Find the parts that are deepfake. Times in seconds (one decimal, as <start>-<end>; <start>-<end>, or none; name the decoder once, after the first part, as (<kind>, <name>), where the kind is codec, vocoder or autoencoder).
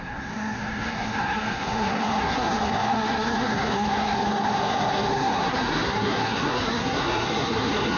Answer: 0.0-8.0 (codec, SNAC)